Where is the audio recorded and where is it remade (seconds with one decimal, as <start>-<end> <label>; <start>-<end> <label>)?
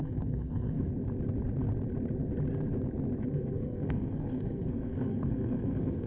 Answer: 0.0-0.9 remade; 0.9-3.3 recorded; 3.3-6.1 remade